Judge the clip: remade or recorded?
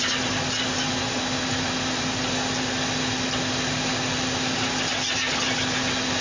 recorded